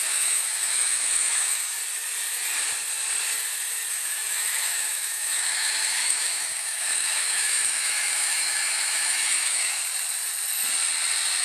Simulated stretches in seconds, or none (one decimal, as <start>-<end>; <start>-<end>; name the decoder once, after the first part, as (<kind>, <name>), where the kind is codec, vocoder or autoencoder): 0.0-1.8 (autoencoder, DAC-VAE); 3.9-9.8